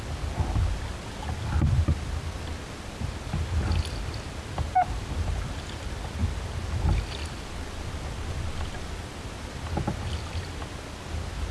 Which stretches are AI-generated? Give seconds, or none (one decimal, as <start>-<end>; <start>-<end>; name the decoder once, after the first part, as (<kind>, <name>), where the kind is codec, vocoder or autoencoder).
none